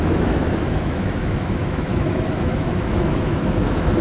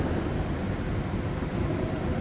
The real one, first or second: second